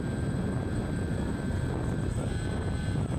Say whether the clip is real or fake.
fake